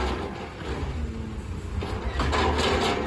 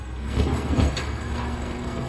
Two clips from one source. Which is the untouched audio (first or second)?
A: first